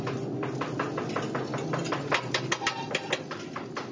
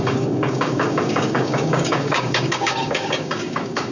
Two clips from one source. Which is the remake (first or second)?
second